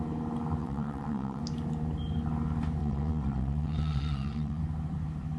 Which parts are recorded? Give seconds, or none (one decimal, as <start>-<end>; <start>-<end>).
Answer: 0.0-0.6; 1.4-2.8; 4.6-5.4